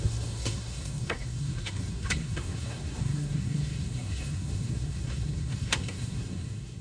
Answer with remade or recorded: remade